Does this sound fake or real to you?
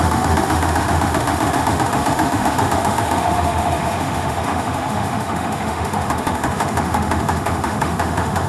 fake